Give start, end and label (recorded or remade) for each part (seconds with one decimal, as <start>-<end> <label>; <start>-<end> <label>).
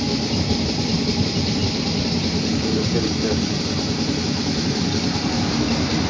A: 0.0-6.1 remade